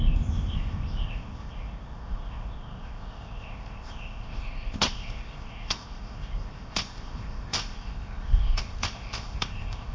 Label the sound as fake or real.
fake